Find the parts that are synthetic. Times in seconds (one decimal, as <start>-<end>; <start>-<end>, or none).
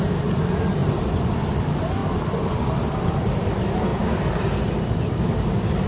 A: 0.8-1.4; 2.0-2.6; 3.9-4.8